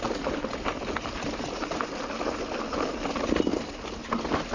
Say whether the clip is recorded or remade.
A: recorded